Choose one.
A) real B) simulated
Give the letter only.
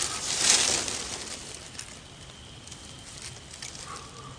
A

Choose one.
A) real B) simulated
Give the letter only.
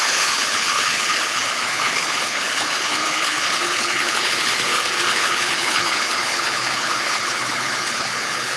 B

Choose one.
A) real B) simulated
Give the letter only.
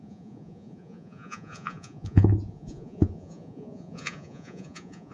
B